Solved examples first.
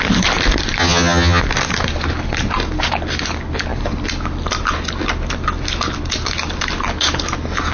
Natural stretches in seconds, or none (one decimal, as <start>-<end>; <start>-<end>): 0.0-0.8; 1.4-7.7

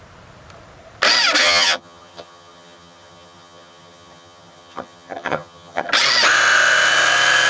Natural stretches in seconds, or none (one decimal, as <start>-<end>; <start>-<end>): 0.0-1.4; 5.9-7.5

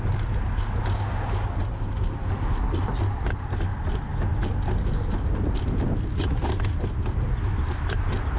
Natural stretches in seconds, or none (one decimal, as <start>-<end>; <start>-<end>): 0.0-8.4

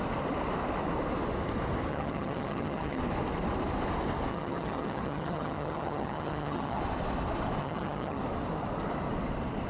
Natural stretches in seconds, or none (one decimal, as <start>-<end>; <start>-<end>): 0.0-1.9; 3.0-4.3; 6.8-7.6; 8.2-9.7

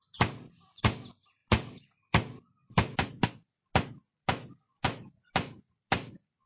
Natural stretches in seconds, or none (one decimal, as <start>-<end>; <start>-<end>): 0.0-6.5

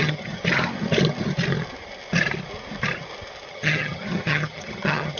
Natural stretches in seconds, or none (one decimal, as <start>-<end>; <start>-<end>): 0.4-3.5

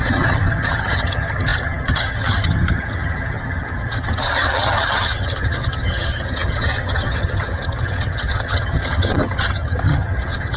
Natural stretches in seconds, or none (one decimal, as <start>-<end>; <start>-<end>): none

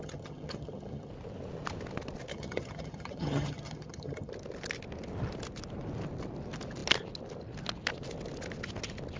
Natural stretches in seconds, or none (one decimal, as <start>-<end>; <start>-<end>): 1.1-2.3; 4.3-9.2